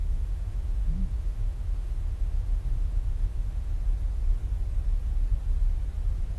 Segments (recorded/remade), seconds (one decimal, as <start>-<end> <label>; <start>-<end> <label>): 0.0-3.7 remade; 3.7-6.4 recorded